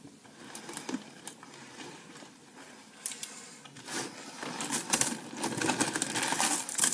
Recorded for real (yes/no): no